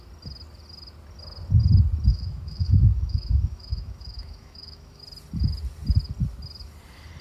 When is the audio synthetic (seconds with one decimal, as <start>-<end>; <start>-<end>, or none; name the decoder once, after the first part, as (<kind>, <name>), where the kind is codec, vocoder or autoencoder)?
2.1-5.0 (autoencoder, DAC-VAE)